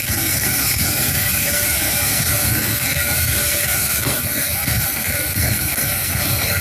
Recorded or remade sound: remade